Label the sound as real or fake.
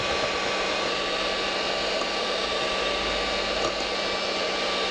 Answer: real